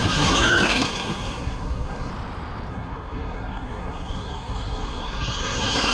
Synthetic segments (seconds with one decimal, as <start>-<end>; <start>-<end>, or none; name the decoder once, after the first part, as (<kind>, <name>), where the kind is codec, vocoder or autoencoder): 0.0-2.1 (codec, SNAC); 2.7-5.9